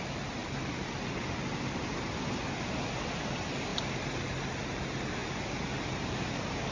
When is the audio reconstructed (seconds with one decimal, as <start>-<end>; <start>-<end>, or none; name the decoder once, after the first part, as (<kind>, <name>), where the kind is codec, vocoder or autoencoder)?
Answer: 0.4-1.0 (vocoder, BigVGAN v2); 3.7-4.8